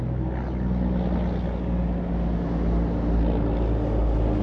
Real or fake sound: real